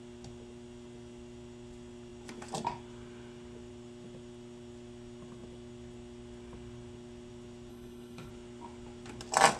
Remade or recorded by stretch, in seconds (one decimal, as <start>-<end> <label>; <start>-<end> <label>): 0.0-7.7 recorded; 7.7-8.3 remade; 8.3-9.6 recorded